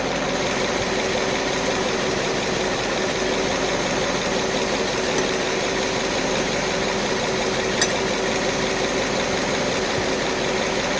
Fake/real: real